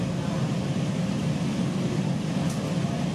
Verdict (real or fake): real